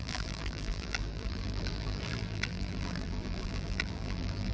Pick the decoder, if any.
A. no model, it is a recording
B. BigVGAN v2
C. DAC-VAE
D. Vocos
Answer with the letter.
B